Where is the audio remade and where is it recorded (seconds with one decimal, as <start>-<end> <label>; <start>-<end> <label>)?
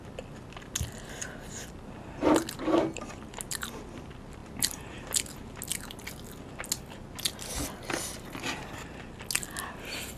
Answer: 0.0-10.2 recorded